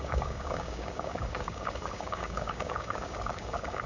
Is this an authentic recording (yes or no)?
no